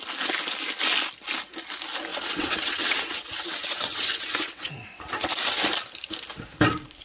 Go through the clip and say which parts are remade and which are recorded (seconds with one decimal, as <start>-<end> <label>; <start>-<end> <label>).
0.0-2.1 recorded; 2.1-5.0 remade; 5.0-7.0 recorded